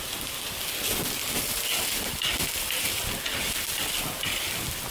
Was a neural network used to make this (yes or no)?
no